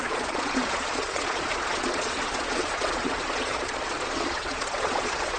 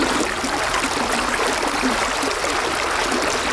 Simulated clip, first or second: first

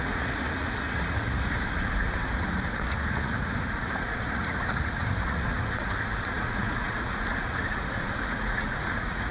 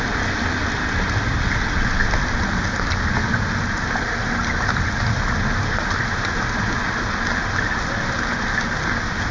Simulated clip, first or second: first